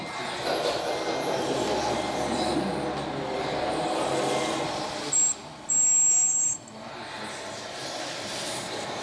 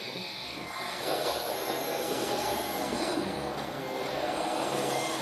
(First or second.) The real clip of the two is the first